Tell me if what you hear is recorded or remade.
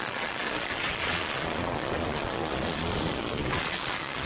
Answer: remade